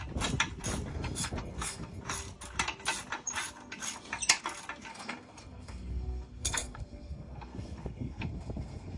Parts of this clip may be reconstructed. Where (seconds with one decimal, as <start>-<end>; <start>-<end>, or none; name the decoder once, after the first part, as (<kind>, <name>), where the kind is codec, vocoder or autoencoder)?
0.9-2.0 (codec, SNAC); 4.9-9.0